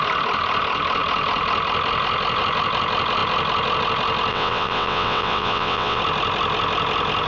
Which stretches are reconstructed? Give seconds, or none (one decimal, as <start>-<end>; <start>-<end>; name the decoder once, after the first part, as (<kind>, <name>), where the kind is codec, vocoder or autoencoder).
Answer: 4.3-6.0 (vocoder, WaveNeXt)